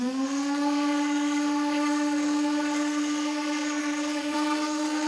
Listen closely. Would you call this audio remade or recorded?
remade